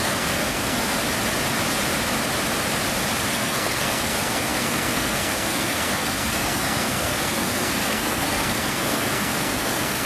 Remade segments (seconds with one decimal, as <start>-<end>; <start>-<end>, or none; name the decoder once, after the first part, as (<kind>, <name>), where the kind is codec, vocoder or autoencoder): 0.0-1.0 (codec, SNAC); 3.3-10.0